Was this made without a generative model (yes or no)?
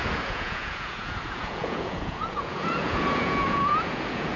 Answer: no